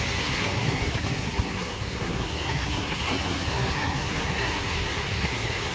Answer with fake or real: fake